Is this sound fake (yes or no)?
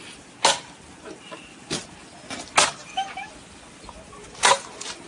no